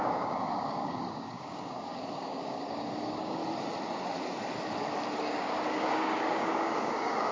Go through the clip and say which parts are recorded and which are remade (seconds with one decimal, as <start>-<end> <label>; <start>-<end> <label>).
0.0-3.4 remade; 3.4-5.2 recorded; 5.2-7.3 remade